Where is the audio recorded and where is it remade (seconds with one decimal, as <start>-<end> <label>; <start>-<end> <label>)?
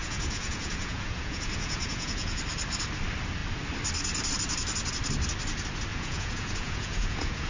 0.0-2.4 remade; 2.4-5.9 recorded; 5.9-7.5 remade